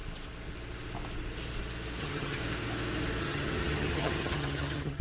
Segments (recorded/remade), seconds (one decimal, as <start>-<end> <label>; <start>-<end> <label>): 0.0-2.0 recorded; 2.0-2.4 remade; 2.4-3.2 recorded; 3.2-5.0 remade